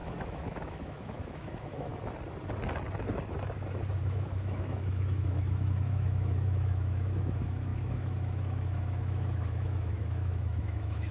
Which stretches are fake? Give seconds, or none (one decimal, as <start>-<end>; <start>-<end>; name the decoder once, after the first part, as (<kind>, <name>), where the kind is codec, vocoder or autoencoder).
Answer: 0.0-1.9 (autoencoder, DAC-VAE); 4.0-11.1